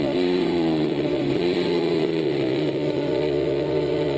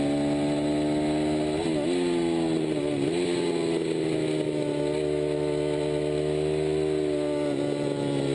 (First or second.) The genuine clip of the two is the second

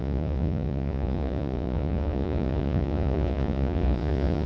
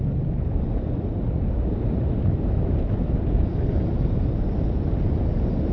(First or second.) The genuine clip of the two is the second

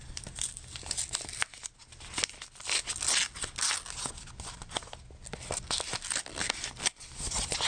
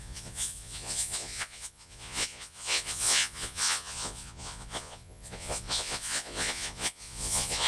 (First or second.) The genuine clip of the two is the first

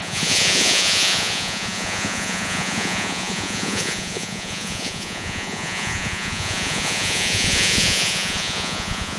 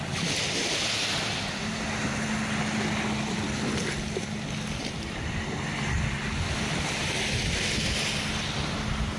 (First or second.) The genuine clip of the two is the second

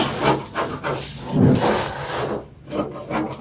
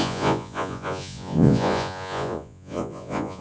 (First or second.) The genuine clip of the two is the first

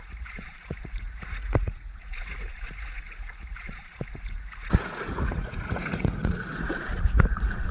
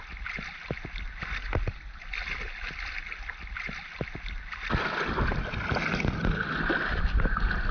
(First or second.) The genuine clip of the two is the second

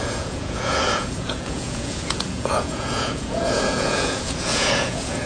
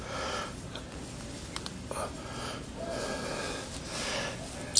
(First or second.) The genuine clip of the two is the second